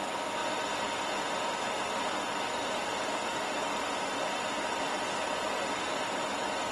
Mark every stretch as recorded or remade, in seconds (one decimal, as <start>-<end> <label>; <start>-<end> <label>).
0.0-2.3 recorded; 2.3-6.3 remade; 6.3-6.7 recorded